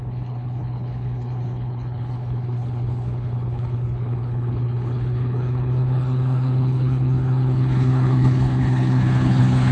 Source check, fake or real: fake